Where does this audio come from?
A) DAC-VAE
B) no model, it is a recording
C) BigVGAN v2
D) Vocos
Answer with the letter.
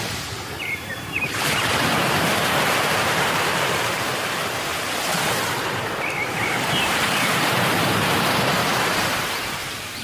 C